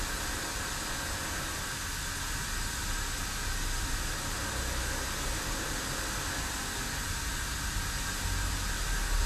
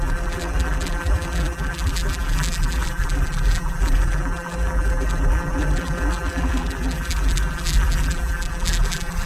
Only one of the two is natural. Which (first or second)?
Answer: first